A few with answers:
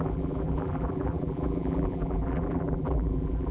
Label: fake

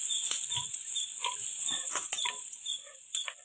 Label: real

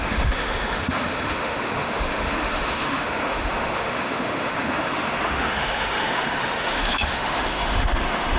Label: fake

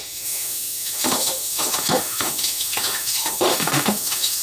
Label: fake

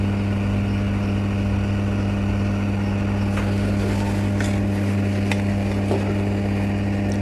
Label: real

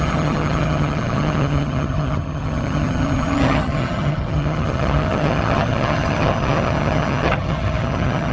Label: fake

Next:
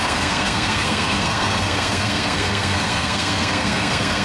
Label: fake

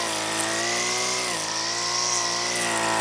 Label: real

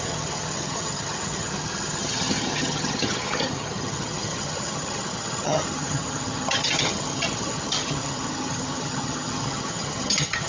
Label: fake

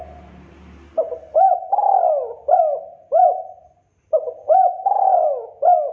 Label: real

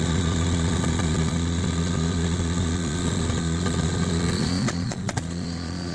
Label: fake